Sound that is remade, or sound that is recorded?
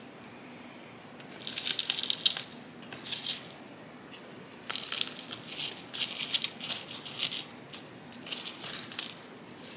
recorded